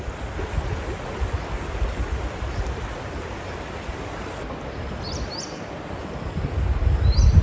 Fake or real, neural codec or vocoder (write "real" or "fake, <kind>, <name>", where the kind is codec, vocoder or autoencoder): real